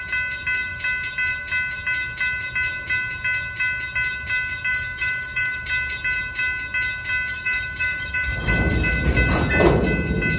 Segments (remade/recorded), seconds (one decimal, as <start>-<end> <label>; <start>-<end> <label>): 0.0-4.7 recorded; 4.7-5.6 remade; 5.6-7.3 recorded; 7.3-8.9 remade; 8.9-10.4 recorded